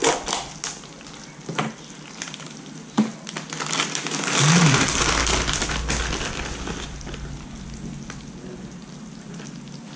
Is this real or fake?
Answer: real